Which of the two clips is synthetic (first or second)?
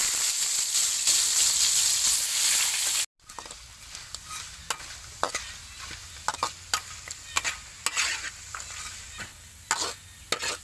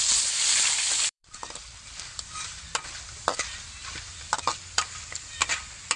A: second